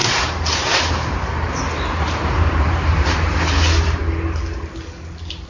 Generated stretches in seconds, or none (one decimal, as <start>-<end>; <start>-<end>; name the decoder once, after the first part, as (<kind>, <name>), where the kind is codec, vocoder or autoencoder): 0.0-3.3 (vocoder, BigVGAN v2)